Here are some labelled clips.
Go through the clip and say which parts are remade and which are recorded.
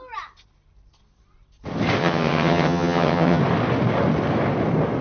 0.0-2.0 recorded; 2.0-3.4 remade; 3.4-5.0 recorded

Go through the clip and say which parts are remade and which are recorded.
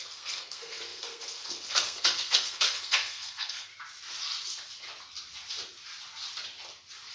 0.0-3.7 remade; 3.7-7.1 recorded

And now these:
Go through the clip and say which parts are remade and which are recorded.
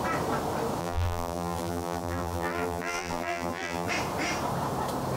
0.0-0.8 recorded; 0.8-3.9 remade; 3.9-5.2 recorded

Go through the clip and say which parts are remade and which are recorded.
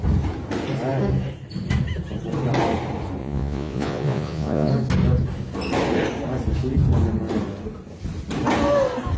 0.0-3.2 recorded; 3.2-4.7 remade; 4.7-9.2 recorded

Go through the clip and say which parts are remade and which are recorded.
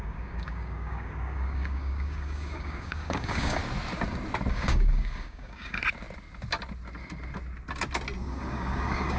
0.0-3.6 remade; 3.6-4.5 recorded; 4.5-5.8 remade; 5.8-8.2 recorded; 8.2-9.2 remade